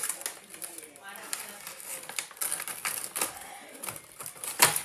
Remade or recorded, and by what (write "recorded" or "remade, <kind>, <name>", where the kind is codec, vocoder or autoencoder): recorded